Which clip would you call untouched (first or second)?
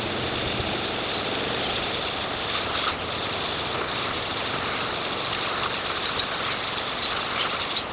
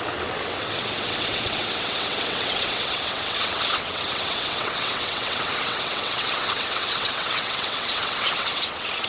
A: first